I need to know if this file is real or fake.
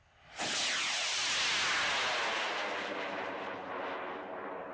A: real